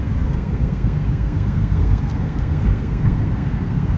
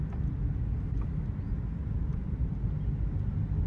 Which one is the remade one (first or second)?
first